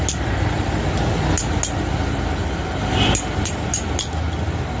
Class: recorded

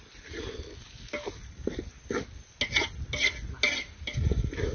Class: recorded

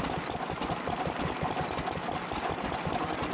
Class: recorded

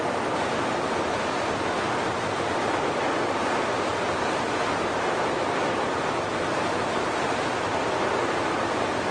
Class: recorded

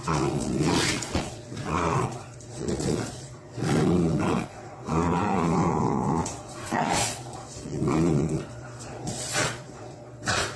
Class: remade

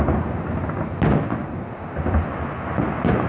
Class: recorded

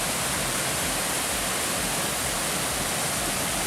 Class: recorded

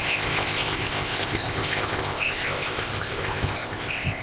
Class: remade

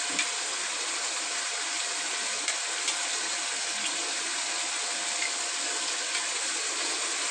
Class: recorded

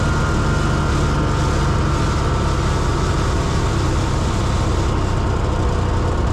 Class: recorded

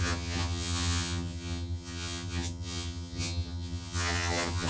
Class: remade